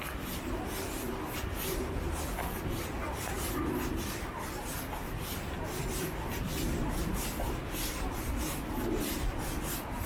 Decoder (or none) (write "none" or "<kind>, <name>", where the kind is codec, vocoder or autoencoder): none